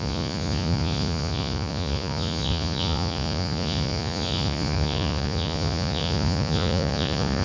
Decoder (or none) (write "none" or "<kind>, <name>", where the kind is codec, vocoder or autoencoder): vocoder, Vocos